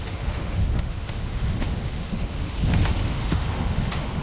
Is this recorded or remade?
remade